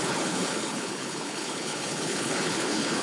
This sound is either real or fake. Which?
fake